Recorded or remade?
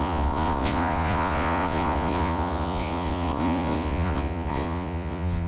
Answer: remade